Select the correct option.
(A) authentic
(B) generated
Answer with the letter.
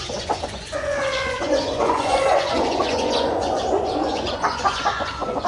B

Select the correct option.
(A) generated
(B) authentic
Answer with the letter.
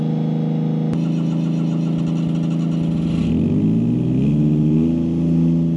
B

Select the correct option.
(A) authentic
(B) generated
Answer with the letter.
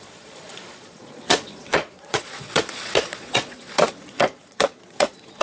B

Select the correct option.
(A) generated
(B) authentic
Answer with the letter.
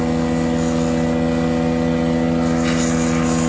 B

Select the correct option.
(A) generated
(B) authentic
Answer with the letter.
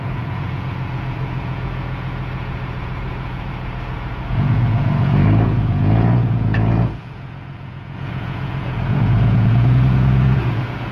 A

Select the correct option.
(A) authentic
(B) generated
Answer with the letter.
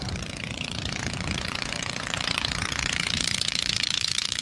B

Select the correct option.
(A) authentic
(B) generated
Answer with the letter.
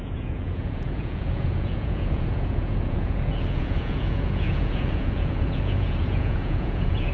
B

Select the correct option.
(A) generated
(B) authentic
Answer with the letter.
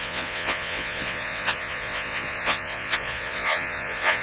A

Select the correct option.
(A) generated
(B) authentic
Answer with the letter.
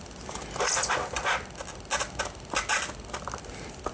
B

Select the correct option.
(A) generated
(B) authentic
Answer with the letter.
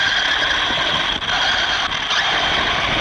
B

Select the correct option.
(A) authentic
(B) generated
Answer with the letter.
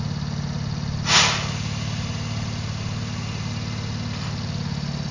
A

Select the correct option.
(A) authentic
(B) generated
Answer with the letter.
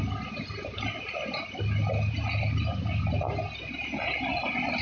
A